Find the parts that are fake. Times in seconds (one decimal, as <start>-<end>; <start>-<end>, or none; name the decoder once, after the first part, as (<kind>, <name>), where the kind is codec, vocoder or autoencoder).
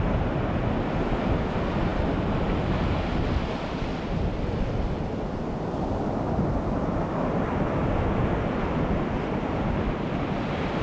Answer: none